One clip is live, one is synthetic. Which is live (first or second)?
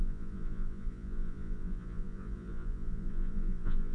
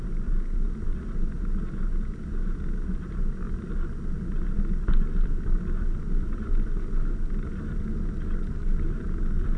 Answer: second